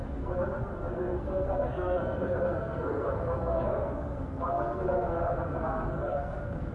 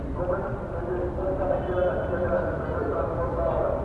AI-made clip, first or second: first